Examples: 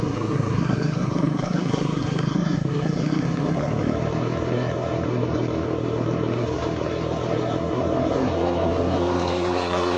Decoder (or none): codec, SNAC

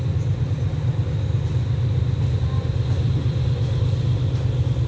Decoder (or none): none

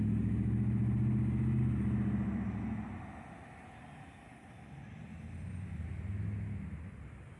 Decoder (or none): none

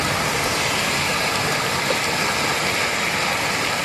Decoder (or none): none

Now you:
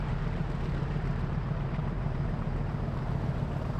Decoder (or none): vocoder, BigVGAN v2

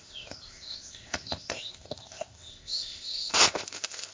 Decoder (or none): codec, ZipCodec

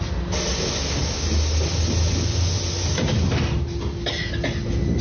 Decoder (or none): none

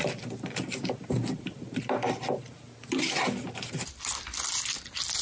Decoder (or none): none